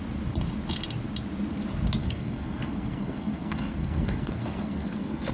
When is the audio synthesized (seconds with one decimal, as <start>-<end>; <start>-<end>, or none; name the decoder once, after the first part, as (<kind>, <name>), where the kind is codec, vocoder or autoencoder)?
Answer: 2.0-5.3 (codec, SNAC)

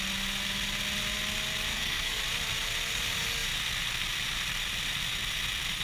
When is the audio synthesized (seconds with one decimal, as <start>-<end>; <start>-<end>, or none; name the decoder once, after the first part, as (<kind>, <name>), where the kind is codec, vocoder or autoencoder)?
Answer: 1.7-2.2 (codec, SNAC)

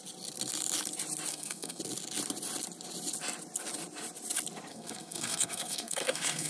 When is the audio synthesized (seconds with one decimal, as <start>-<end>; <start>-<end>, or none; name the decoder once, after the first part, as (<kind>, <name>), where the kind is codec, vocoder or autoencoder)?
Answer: 1.3-1.8 (codec, SNAC); 4.7-6.5

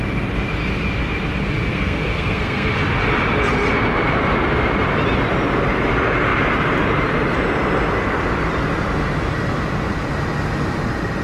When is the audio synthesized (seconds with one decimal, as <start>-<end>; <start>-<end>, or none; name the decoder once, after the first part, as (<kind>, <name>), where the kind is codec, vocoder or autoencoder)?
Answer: 1.7-2.7 (codec, SNAC)